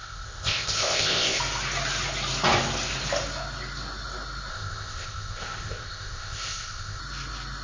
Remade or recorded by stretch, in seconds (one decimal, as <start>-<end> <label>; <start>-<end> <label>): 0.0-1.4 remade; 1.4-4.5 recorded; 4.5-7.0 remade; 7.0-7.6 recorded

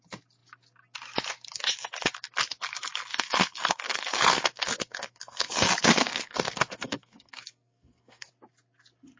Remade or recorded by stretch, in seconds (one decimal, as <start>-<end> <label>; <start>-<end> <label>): 0.0-3.1 recorded; 3.1-8.3 remade; 8.3-9.2 recorded

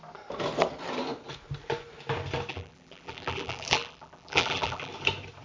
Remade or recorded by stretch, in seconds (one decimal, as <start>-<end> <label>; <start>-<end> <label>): 0.0-2.5 recorded; 2.5-4.9 remade; 4.9-5.4 recorded